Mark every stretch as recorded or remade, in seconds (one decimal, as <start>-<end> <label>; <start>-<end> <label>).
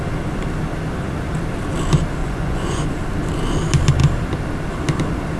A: 0.0-2.2 recorded; 2.2-2.9 remade; 2.9-5.4 recorded